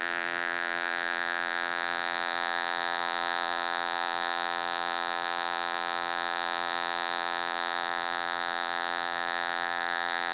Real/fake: fake